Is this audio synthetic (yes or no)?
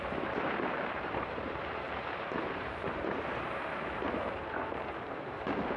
yes